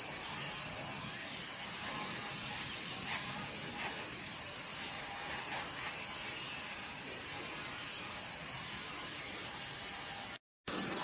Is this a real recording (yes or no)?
yes